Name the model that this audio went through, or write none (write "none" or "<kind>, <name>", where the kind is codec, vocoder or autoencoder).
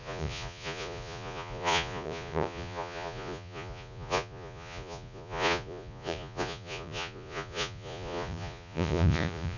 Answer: vocoder, Vocos